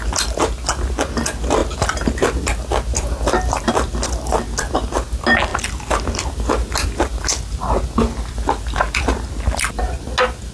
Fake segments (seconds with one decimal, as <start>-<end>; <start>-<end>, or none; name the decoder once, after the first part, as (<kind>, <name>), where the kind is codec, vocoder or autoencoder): none